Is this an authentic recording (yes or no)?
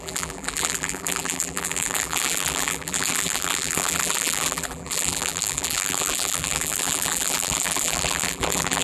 no